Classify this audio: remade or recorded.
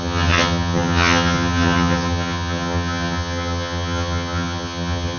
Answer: remade